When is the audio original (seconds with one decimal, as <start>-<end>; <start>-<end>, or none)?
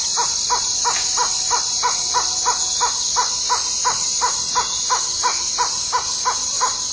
0.0-6.9